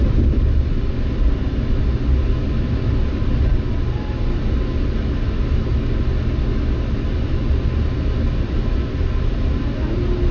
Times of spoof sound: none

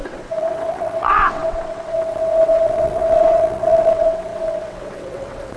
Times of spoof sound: 0.0-5.6 (vocoder, WaveNeXt)

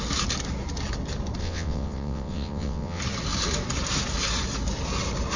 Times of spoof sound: 1.4-3.0 (vocoder, WaveNeXt)

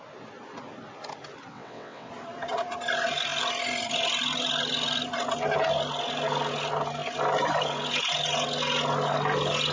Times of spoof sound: 1.5-2.1 (vocoder, WaveNeXt)

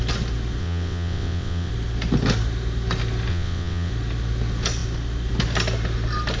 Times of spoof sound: 0.6-1.7 (vocoder, WaveNeXt); 3.3-3.9

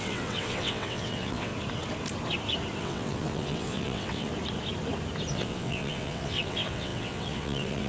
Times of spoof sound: 0.0-1.5 (vocoder, WaveNeXt); 2.8-4.3; 5.3-7.9

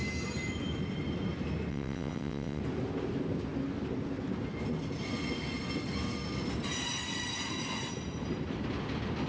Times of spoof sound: 1.7-2.6 (vocoder, WaveNeXt)

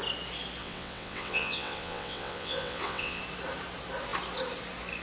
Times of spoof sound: 0.6-3.2 (vocoder, WaveNeXt)